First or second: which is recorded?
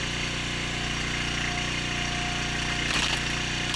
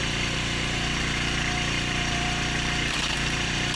first